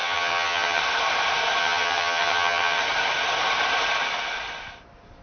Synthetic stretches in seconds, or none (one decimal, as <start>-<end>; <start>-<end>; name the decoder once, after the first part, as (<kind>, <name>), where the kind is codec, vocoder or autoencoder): 0.0-0.8 (vocoder, HiFi-GAN); 1.6-2.8